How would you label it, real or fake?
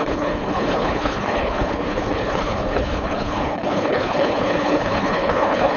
fake